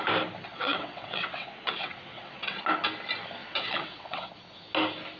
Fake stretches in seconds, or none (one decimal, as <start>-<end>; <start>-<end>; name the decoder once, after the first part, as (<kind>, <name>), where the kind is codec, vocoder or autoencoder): 0.5-2.6 (vocoder, WaveNeXt); 3.4-4.3